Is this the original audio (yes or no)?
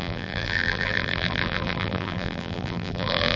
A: no